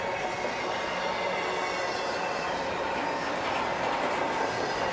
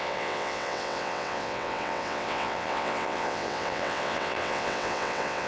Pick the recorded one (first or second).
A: first